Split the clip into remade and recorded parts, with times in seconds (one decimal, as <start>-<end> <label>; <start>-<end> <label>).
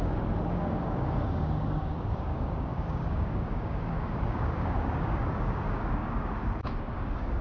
0.0-7.4 remade